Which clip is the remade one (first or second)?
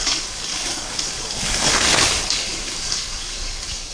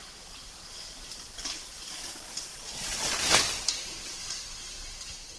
first